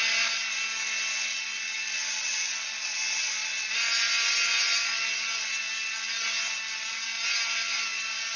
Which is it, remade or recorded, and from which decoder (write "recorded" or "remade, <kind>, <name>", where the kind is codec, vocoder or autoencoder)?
recorded